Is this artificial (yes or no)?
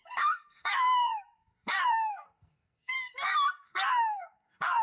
yes